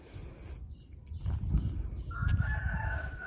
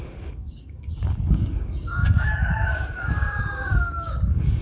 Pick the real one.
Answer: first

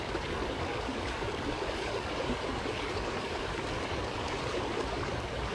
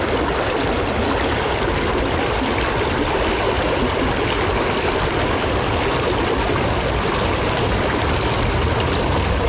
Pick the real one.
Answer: second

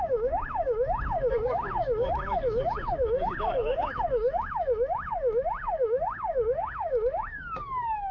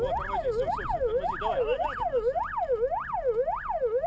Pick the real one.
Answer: second